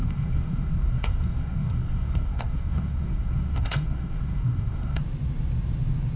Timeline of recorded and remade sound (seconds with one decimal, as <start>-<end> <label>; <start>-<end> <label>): 0.0-5.0 remade; 5.0-6.2 recorded